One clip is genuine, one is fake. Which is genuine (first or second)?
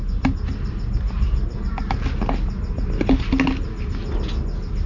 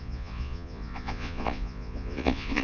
first